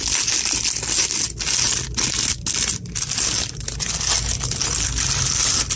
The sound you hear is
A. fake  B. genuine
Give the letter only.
B